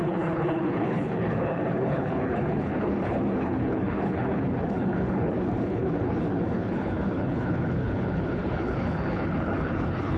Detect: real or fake fake